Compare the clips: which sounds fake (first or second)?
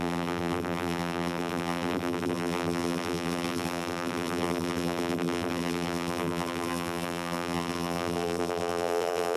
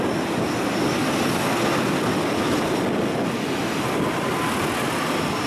first